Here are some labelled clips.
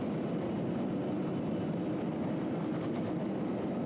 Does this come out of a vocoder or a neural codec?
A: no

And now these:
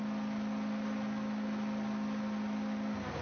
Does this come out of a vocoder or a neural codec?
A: no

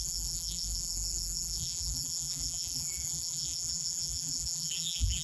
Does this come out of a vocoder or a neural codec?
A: yes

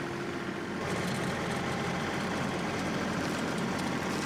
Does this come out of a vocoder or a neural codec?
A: no